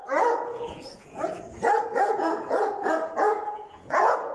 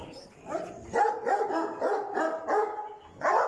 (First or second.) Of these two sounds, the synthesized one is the first